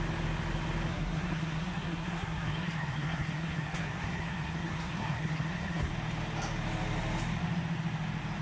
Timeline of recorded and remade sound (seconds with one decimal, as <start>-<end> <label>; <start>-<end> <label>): 0.0-0.9 recorded; 0.9-5.9 remade; 5.9-8.4 recorded